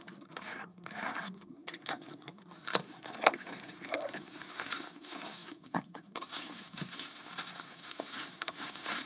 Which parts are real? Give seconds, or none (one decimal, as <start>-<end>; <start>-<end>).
none